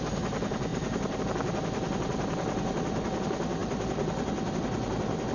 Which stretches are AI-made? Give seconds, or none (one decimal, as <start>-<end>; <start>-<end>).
none